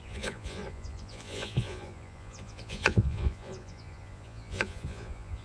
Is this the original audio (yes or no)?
no